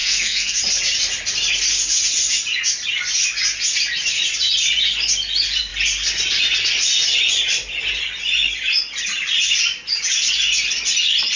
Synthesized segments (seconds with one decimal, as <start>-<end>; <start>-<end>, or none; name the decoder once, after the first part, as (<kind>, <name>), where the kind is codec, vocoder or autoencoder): 0.0-0.6 (codec, SNAC)